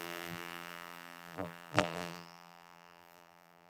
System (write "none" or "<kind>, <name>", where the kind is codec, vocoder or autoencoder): vocoder, BigVGAN v2